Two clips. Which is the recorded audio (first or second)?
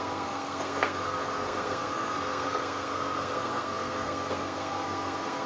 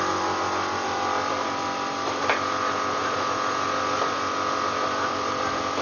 second